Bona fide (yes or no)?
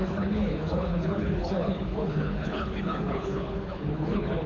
no